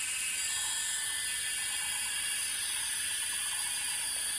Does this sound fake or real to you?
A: real